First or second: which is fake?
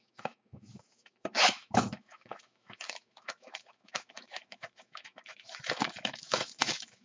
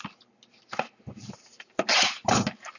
first